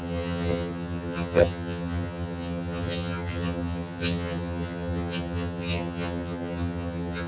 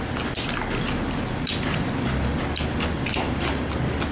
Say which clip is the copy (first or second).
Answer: first